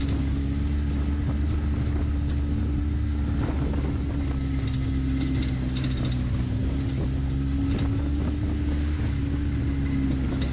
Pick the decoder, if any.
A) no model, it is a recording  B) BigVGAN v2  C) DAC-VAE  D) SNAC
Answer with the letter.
A